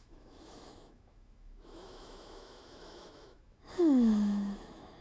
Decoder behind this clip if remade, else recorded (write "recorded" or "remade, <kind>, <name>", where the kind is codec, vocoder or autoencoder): remade, autoencoder, DAC-VAE